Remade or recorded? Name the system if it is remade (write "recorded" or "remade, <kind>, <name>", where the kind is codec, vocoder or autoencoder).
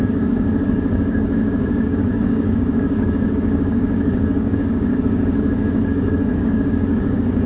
remade, codec, DAC